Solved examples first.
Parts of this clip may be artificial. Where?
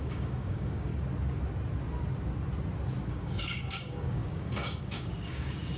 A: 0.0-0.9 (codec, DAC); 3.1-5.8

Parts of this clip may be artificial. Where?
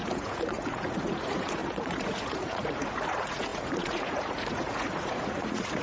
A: 0.0-5.8 (vocoder, Vocos)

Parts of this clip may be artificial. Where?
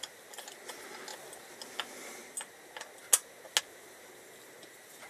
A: none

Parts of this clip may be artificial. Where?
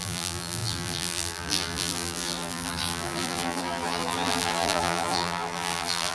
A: 0.0-6.1 (vocoder, BigVGAN v2)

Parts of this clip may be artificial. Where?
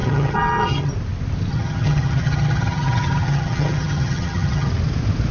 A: 0.0-0.9 (vocoder, HiFi-GAN); 1.5-4.7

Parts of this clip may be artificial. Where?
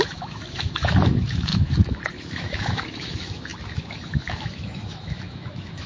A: 0.0-5.9 (autoencoder, DAC-VAE)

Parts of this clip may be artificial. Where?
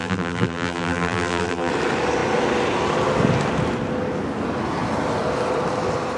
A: 0.0-1.7 (vocoder, BigVGAN v2)